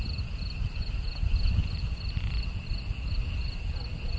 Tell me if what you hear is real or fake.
real